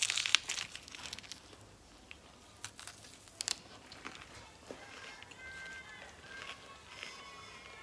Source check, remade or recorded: recorded